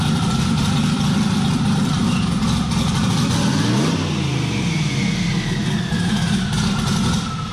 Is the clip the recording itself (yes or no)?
yes